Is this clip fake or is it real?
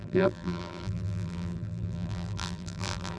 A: fake